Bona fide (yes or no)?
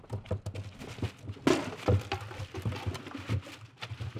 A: yes